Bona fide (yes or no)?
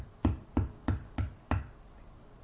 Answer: yes